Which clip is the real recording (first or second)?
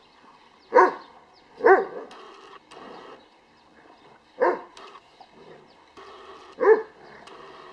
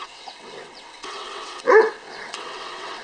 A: first